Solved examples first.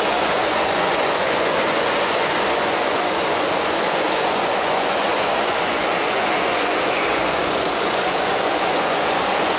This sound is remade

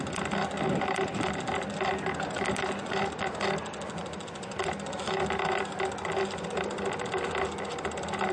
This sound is recorded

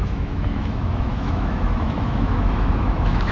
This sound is remade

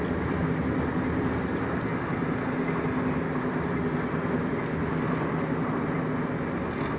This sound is recorded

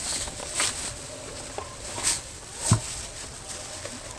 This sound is recorded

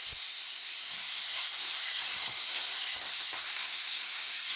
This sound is remade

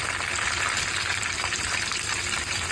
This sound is recorded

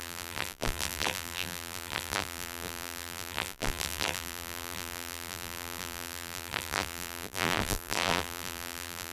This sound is remade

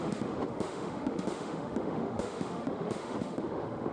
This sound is remade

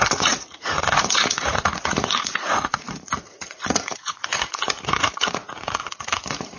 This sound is remade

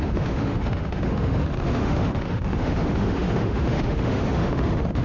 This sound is remade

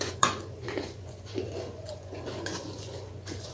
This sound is remade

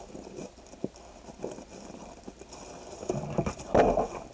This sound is recorded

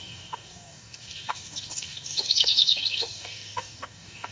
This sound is remade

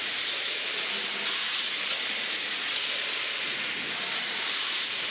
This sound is recorded